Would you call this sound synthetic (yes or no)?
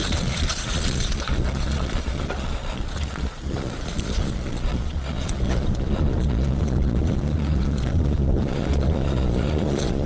yes